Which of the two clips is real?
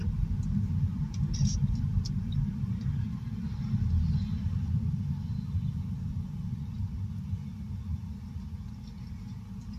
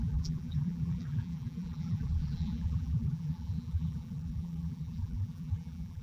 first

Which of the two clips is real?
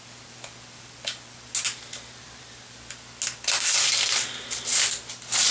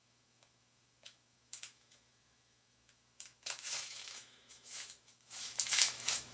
first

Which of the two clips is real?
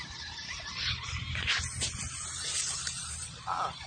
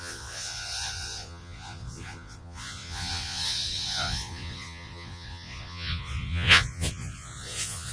first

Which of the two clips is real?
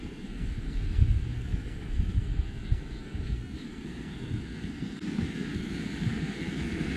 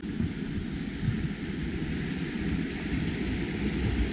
second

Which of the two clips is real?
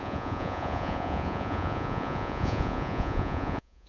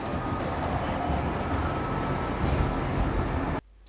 second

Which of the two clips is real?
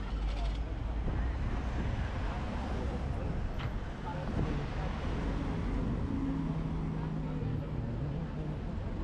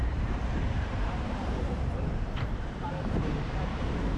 first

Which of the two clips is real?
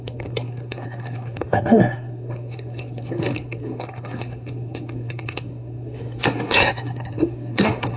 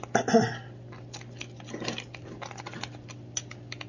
second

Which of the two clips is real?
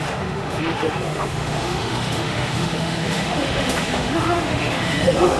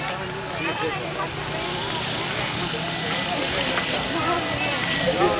second